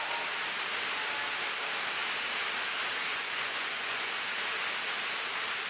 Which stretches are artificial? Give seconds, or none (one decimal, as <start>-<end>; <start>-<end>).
3.1-4.1